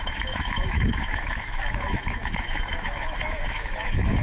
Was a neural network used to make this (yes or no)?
yes